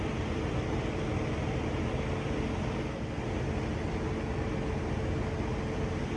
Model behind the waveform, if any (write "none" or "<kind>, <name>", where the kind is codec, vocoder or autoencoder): none